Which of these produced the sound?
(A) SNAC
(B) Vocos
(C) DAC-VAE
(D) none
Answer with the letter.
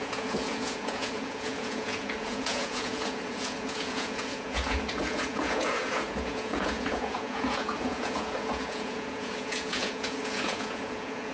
B